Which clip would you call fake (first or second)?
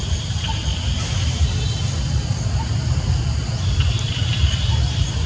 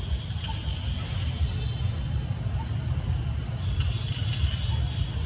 first